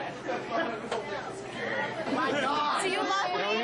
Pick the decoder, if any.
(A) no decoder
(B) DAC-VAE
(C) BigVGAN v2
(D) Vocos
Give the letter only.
A